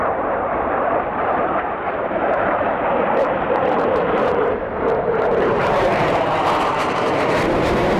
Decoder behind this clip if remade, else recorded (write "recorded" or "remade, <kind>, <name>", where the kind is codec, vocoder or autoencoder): remade, vocoder, BigVGAN v2